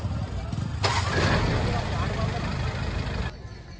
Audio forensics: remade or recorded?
recorded